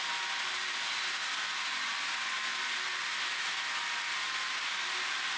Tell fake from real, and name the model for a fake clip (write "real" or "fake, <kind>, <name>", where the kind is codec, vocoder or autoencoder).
real